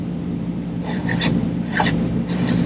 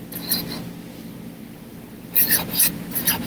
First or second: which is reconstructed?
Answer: first